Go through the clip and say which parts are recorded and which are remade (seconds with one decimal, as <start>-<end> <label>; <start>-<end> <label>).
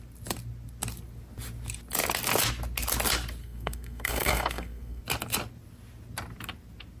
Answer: 0.0-3.4 recorded; 3.4-5.0 remade; 5.0-7.0 recorded